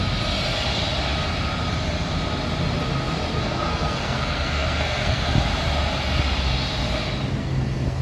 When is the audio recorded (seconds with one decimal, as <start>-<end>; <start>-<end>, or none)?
0.0-3.3; 5.2-7.4